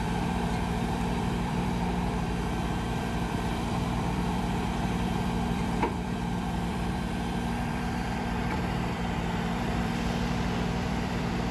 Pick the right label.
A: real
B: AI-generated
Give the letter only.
B